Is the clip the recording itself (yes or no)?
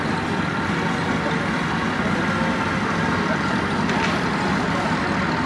yes